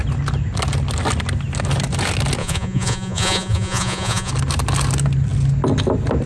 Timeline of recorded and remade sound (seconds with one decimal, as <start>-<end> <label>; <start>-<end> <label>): 0.0-2.4 recorded; 2.4-4.3 remade; 4.3-6.3 recorded